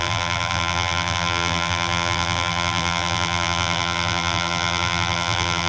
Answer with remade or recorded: remade